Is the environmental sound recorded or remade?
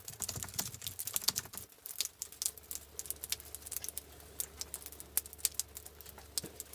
recorded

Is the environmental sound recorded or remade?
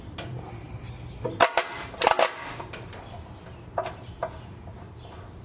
recorded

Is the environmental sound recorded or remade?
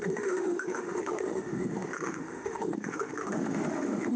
remade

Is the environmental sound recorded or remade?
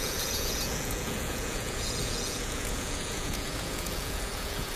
remade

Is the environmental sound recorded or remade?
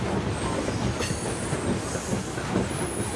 recorded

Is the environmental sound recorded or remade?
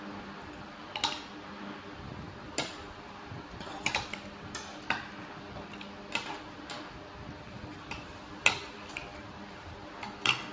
recorded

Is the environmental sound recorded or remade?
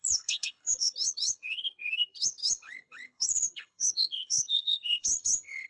remade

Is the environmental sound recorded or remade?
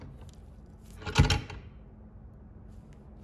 recorded